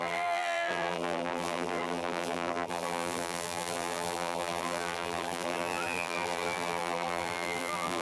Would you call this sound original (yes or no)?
no